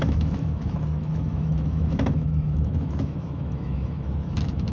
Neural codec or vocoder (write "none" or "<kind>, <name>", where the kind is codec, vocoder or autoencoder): autoencoder, DAC-VAE